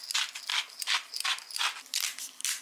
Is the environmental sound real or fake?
real